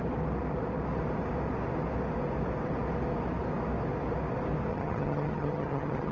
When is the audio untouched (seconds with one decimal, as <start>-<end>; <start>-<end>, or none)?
0.0-4.7